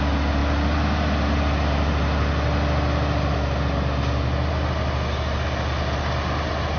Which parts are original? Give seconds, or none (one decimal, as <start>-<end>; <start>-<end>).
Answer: 0.0-6.8